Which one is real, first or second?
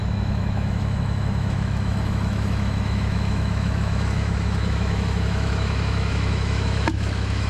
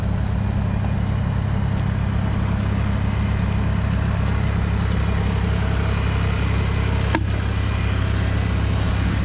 second